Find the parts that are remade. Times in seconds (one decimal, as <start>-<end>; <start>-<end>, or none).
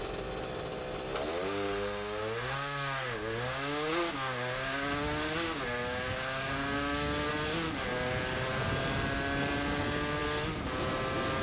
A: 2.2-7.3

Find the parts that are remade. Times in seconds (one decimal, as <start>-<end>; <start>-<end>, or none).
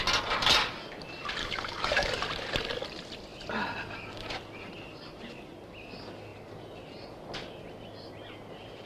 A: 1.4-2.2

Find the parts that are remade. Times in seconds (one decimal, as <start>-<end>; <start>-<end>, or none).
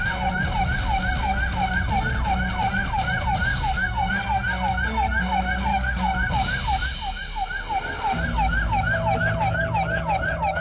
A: 3.5-4.1; 5.7-6.3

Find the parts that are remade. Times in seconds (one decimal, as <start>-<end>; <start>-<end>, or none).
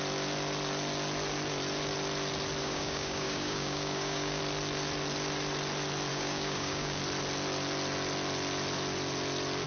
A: 2.6-4.4; 6.1-7.0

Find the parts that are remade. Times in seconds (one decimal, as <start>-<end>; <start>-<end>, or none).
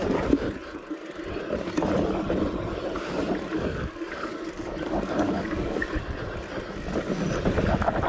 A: 3.5-5.8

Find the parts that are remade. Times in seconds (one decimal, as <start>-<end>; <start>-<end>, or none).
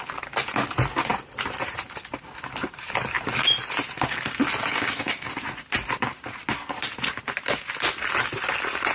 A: 4.7-5.3